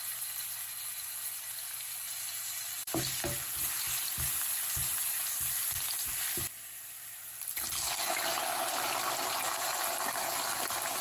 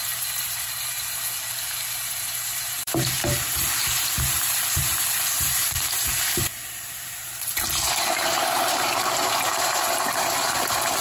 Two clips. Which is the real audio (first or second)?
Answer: first